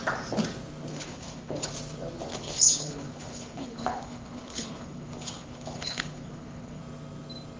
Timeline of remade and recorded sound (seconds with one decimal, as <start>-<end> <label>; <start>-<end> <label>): 0.0-0.9 recorded; 0.9-1.7 remade; 1.7-2.3 recorded; 2.3-6.8 remade; 6.8-7.6 recorded